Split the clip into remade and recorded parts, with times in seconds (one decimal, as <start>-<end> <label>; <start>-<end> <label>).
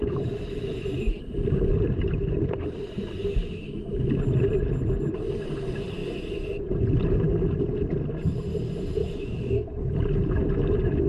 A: 0.0-0.8 remade; 0.8-9.0 recorded; 9.0-9.9 remade; 9.9-11.1 recorded